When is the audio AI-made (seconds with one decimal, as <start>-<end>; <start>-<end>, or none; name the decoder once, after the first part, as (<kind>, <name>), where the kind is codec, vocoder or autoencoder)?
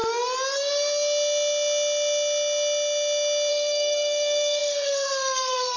3.5-5.8 (codec, SNAC)